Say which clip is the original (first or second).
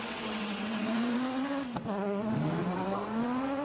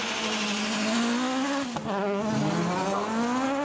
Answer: second